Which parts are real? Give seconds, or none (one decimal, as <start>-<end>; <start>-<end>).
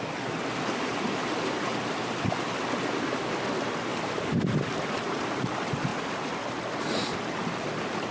5.9-6.8